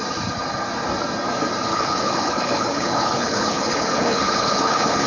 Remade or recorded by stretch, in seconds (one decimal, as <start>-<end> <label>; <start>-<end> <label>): 0.0-1.7 recorded; 1.7-5.1 remade